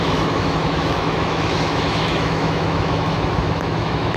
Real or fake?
fake